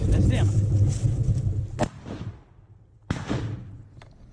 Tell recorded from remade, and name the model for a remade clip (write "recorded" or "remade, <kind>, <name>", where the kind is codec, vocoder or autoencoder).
recorded